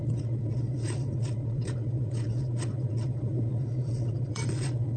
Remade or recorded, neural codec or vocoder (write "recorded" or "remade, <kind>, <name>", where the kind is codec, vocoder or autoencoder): remade, vocoder, Vocos